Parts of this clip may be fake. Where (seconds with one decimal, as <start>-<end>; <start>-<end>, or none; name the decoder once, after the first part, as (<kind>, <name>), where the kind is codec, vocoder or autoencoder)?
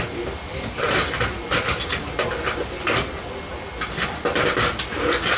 none